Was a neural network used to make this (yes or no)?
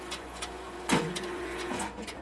yes